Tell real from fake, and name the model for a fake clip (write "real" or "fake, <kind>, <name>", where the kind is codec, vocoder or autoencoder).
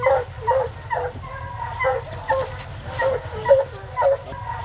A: real